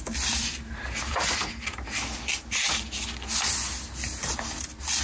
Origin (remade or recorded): recorded